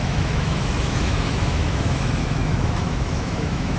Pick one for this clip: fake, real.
fake